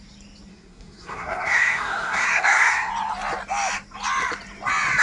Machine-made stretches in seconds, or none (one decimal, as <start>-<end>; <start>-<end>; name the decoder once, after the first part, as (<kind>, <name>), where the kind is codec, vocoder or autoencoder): 0.5-2.9 (codec, SNAC)